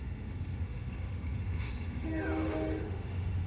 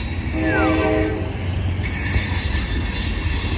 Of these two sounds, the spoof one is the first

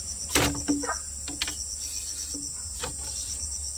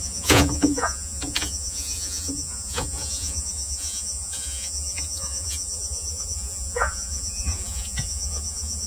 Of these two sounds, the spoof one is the second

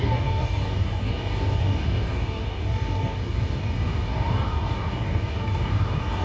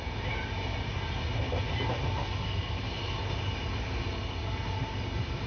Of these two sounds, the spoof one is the first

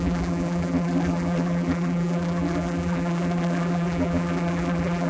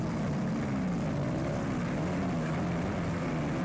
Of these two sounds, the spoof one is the first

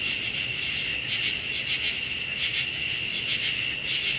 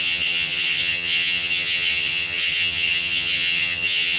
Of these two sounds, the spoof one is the second